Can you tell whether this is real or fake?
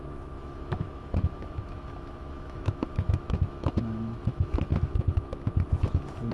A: fake